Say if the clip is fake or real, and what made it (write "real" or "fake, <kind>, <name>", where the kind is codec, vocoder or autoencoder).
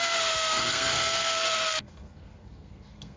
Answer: fake, codec, SNAC